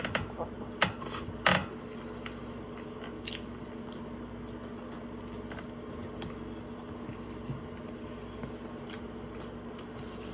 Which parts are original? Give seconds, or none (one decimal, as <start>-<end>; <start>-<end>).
0.0-10.3

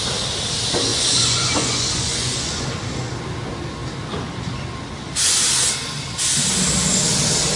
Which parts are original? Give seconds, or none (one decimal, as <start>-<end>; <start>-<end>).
0.0-0.9; 2.7-7.6

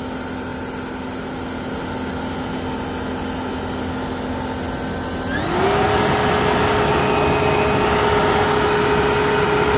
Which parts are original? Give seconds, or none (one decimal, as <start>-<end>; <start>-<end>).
0.0-9.8